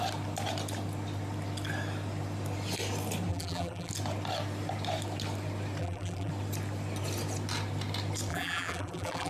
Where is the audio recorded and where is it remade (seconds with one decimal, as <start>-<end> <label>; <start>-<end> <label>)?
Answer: 0.0-3.3 recorded; 3.3-3.9 remade; 3.9-5.8 recorded; 5.8-6.3 remade; 6.3-8.3 recorded; 8.3-9.3 remade